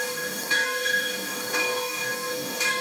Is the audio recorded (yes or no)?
no